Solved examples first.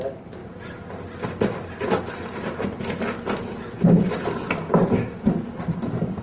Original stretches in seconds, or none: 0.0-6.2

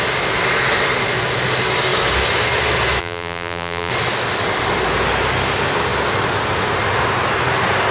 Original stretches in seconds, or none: 0.0-3.0; 3.9-7.9

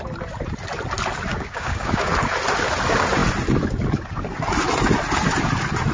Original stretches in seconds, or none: 0.0-1.3; 2.1-5.9

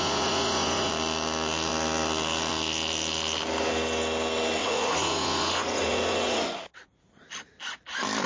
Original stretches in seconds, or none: 0.9-4.6; 7.3-8.3

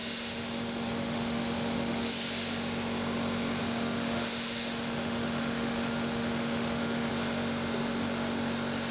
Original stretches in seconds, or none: 2.1-3.6; 7.1-8.9

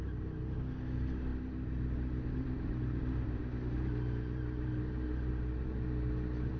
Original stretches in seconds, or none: 0.0-6.6